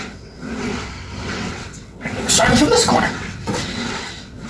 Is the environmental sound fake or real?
fake